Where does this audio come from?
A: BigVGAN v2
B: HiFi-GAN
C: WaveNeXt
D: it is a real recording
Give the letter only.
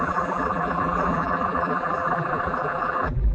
A